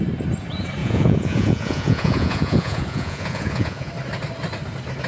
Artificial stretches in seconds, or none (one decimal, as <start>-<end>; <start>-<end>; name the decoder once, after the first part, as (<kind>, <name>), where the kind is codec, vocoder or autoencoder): 0.8-3.9 (vocoder, Vocos)